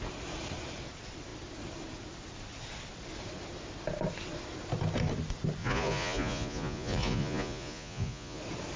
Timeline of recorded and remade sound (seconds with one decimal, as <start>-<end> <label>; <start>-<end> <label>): 0.0-5.6 recorded; 5.6-8.4 remade; 8.4-8.8 recorded